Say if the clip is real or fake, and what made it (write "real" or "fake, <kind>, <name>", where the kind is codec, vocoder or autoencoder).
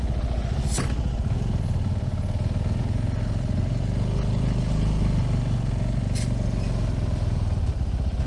real